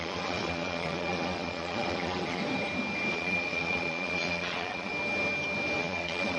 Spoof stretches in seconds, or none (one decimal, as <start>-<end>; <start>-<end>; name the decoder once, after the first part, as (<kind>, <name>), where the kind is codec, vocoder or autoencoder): 0.0-2.4 (vocoder, Vocos); 3.1-4.9; 5.8-6.4